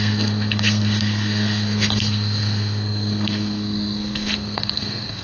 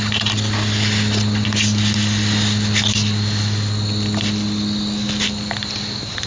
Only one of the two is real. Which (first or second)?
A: second